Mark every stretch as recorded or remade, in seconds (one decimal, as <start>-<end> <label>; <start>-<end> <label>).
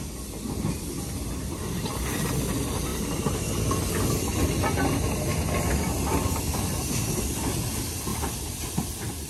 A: 0.0-9.3 recorded